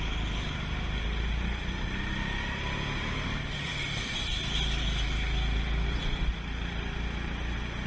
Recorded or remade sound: recorded